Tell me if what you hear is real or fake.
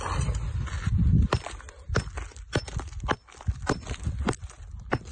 real